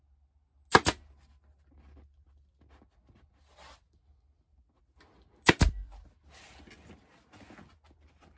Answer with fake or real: real